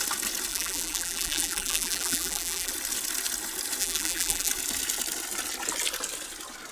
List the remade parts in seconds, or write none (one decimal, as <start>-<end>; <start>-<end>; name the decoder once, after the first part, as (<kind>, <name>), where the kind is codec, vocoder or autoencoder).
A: 0.5-2.7 (vocoder, BigVGAN v2); 3.8-4.5